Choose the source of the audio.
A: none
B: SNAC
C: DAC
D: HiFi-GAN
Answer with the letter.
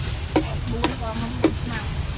A